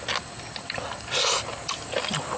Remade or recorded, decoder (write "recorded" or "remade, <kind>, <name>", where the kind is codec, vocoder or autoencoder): recorded